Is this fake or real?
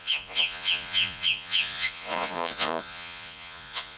fake